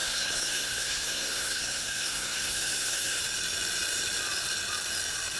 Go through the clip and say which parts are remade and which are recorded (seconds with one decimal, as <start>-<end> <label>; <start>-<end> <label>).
0.0-3.2 remade; 3.2-5.4 recorded